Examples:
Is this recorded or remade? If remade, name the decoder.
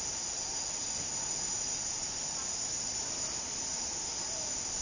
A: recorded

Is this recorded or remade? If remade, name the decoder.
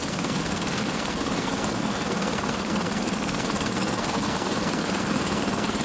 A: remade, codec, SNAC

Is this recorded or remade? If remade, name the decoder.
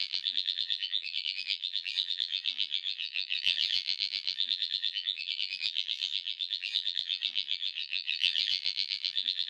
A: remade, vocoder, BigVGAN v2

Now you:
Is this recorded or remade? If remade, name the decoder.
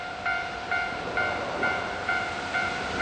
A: remade, vocoder, BigVGAN v2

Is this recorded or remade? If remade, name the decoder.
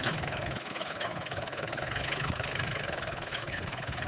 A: remade, codec, HILCodec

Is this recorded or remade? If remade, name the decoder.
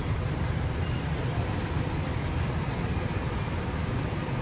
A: remade, vocoder, BigVGAN v2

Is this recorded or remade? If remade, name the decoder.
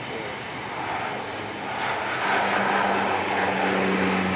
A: recorded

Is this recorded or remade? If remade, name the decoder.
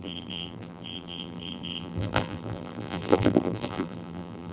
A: remade, vocoder, BigVGAN v2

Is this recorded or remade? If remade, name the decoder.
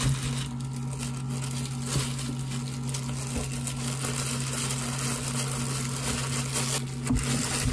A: recorded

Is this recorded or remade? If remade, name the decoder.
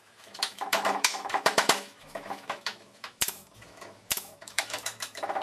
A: remade, autoencoder, DAC-VAE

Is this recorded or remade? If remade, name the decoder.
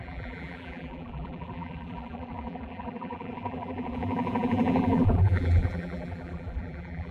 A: remade, vocoder, BigVGAN v2